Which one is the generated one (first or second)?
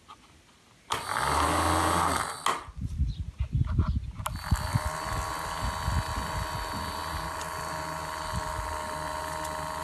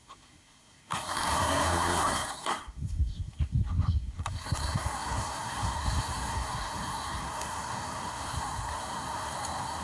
second